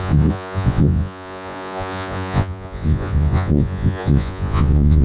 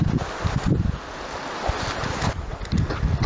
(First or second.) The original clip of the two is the second